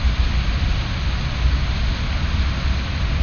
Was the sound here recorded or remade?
recorded